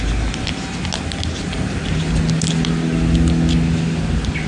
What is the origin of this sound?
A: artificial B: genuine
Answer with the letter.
B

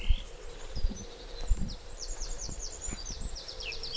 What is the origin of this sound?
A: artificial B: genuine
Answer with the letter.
A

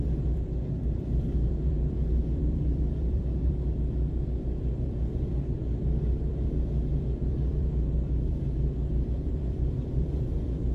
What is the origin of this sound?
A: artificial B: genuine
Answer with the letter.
A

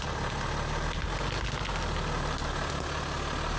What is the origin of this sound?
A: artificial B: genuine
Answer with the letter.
B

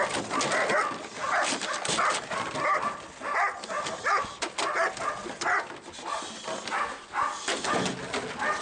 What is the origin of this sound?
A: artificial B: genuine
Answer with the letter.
B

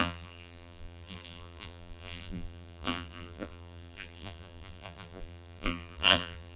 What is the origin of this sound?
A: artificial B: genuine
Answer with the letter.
A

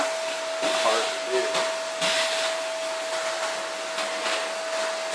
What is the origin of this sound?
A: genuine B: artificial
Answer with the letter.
A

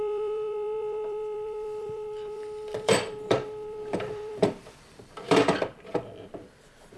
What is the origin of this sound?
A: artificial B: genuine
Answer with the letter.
A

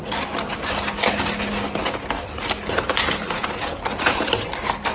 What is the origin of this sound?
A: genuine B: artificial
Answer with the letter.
A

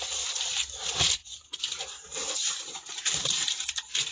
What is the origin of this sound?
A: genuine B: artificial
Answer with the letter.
B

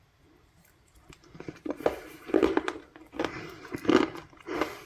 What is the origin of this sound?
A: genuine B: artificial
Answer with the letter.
A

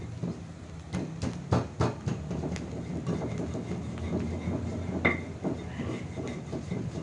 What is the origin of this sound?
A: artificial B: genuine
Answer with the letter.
B